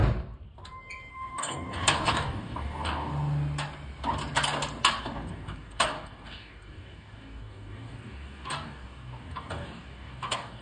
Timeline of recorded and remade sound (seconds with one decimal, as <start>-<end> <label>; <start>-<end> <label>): 0.0-1.1 recorded; 1.1-3.1 remade; 3.1-5.0 recorded; 5.0-10.6 remade